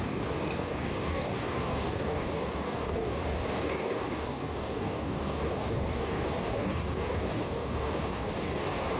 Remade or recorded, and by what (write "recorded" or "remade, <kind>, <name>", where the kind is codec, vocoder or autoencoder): remade, codec, DAC